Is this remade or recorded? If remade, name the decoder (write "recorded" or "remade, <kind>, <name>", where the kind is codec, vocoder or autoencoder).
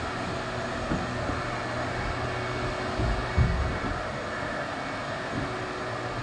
recorded